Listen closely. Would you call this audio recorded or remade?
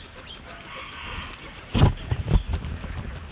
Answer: recorded